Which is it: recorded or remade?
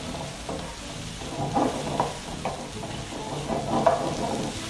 recorded